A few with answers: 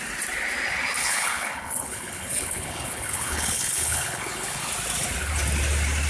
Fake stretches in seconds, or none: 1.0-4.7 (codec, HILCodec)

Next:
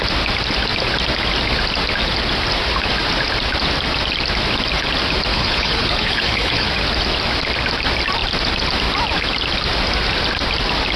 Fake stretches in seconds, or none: 5.3-6.7 (codec, HILCodec)

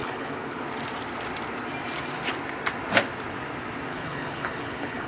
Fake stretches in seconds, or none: 0.0-0.6 (codec, HILCodec); 3.9-5.1

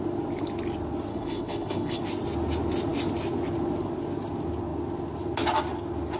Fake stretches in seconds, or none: 1.1-2.0 (codec, HILCodec)

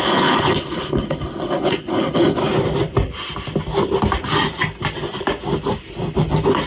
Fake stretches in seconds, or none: 0.0-2.4 (codec, HILCodec)

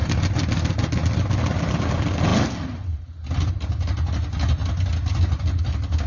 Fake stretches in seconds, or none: none

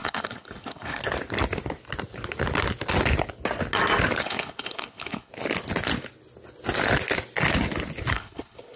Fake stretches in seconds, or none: 0.0-1.0 (codec, HILCodec); 4.2-5.3; 8.1-8.8

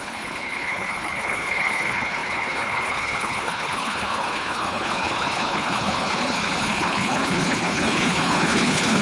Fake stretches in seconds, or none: 0.0-9.0 (codec, HILCodec)